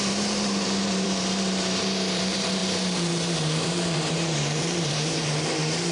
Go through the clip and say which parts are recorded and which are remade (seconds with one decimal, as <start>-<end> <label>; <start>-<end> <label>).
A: 0.0-5.9 remade